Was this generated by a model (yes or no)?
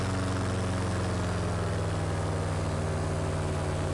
no